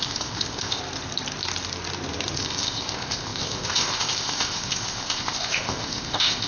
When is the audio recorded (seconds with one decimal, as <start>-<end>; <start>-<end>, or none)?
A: 0.8-2.4